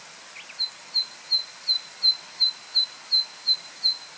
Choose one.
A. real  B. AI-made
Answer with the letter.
A